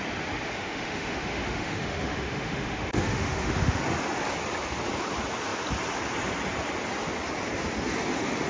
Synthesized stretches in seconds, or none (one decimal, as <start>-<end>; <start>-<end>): 0.5-3.8